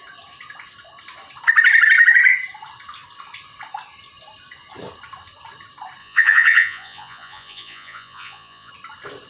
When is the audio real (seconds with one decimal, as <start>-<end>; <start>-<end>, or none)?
0.0-6.0; 8.7-9.3

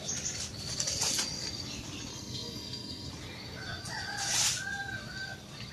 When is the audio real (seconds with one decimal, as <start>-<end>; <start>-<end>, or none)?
0.0-2.1; 3.1-5.7

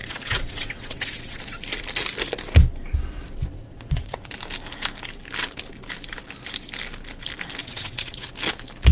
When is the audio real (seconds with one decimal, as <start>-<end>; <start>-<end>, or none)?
1.4-3.5; 4.3-7.6; 8.3-8.9

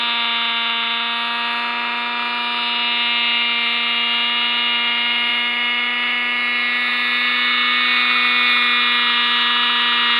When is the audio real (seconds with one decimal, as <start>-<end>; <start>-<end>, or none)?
0.0-10.2

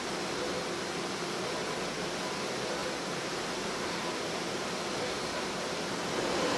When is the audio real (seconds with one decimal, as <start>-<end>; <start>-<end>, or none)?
0.0-2.8; 4.6-6.6

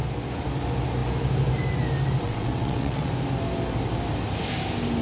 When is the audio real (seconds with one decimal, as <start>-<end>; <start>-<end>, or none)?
0.0-2.2; 3.1-5.0

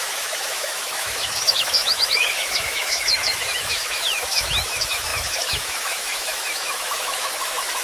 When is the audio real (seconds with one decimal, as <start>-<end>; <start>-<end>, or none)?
none

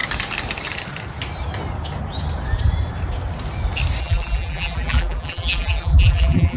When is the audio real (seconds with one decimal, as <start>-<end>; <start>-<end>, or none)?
0.0-4.0